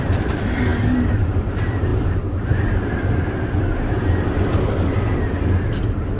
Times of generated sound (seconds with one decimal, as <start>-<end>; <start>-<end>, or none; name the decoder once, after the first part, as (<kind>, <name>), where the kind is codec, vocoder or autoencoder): 0.0-0.7 (vocoder, BigVGAN v2); 1.4-6.2